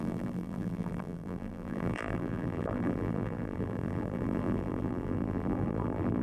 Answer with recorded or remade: remade